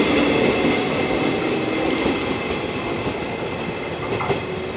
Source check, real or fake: real